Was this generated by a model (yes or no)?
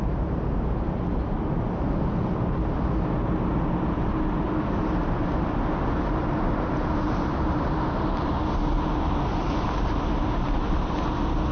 no